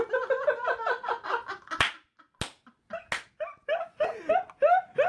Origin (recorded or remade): recorded